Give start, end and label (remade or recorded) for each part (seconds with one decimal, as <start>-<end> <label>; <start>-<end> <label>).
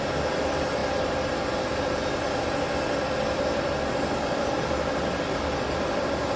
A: 0.0-6.4 recorded